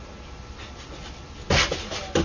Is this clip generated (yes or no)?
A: no